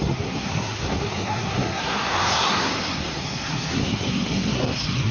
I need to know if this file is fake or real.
fake